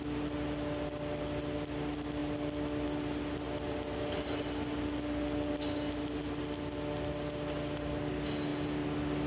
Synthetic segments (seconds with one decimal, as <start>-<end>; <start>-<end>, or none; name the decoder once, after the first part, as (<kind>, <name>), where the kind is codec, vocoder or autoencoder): none